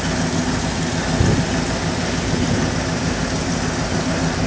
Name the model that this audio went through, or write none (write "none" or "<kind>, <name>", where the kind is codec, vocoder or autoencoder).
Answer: none